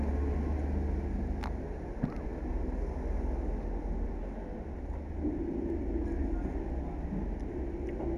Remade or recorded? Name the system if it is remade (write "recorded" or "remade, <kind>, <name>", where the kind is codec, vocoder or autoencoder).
recorded